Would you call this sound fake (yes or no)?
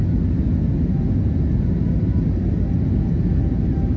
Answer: no